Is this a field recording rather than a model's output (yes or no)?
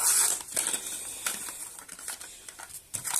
yes